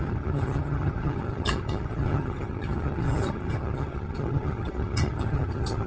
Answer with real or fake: fake